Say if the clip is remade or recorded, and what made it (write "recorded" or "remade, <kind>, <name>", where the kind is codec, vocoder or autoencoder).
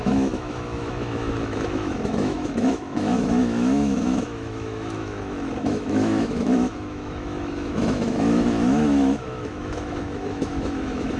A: remade, autoencoder, DAC-VAE